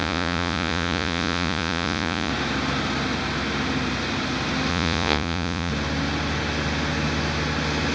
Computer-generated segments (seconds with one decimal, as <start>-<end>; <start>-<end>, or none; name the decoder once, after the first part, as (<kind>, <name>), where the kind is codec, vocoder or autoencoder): 0.0-2.3 (vocoder, Vocos); 4.7-5.7